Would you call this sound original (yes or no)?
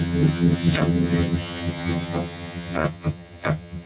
no